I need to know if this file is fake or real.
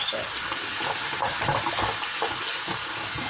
real